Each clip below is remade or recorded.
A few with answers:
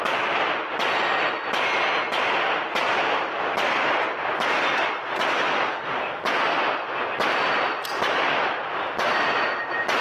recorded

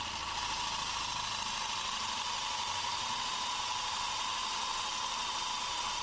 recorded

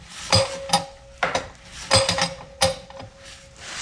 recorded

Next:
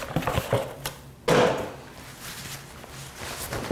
recorded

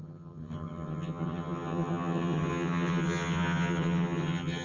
remade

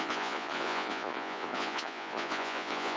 remade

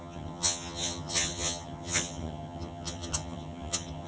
remade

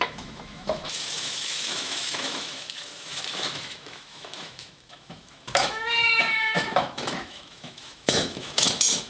remade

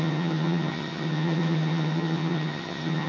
remade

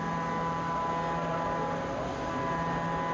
recorded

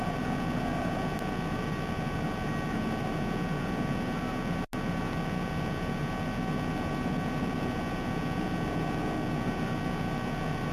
recorded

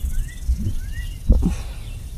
recorded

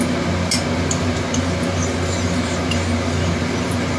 recorded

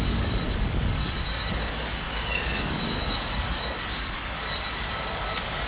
remade